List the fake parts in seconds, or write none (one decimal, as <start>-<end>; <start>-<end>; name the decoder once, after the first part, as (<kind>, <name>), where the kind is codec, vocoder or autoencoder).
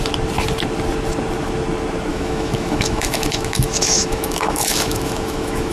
2.1-5.7 (autoencoder, DAC-VAE)